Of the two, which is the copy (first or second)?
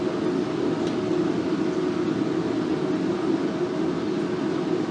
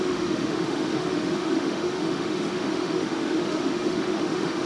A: second